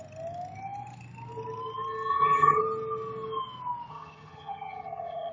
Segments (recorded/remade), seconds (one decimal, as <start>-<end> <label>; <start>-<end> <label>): 0.0-2.1 recorded; 2.1-2.6 remade; 2.6-3.9 recorded; 3.9-5.3 remade